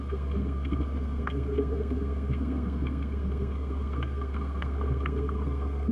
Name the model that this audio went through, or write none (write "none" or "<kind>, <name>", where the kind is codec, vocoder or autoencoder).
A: codec, SNAC